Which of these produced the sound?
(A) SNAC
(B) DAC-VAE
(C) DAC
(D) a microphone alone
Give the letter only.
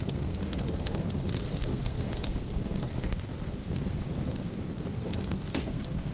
A